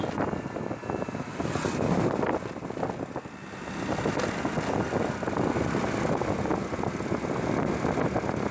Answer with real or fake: real